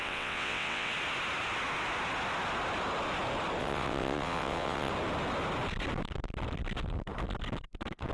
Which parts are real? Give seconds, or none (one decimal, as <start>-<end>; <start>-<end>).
0.9-3.6; 4.9-8.1